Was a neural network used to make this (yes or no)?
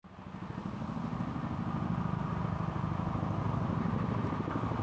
no